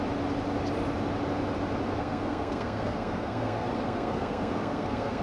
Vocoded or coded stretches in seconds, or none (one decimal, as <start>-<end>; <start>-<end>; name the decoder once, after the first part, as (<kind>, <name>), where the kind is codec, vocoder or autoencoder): 2.0-5.2 (codec, SNAC)